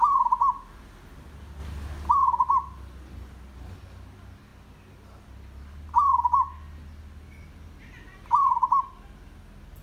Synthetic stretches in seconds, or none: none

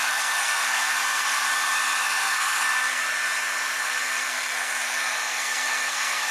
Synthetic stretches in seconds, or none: 0.0-1.5 (codec, SNAC); 2.0-3.0; 3.8-6.3

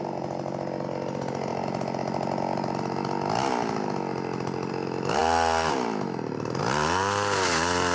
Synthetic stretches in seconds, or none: none

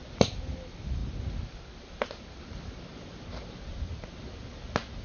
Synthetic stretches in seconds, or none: none

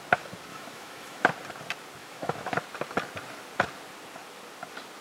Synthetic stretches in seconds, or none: 0.5-1.3 (autoencoder, DAC-VAE); 2.0-2.6

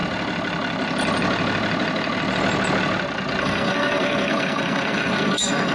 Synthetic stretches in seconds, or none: 3.4-5.7 (codec, SNAC)